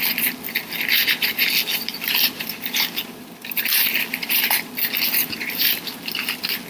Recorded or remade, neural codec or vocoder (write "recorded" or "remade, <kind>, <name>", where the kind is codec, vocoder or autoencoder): recorded